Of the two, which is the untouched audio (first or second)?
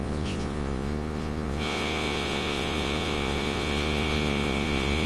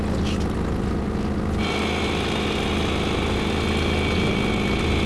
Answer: second